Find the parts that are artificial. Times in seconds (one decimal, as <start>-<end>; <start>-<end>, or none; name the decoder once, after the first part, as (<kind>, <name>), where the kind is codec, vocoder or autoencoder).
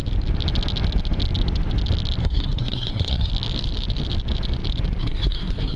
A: 2.2-3.3 (codec, SNAC); 5.0-5.8